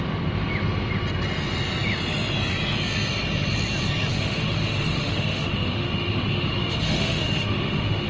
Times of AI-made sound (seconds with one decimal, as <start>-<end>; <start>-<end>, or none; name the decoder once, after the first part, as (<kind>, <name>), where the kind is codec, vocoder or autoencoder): 4.1-8.1 (autoencoder, DAC-VAE)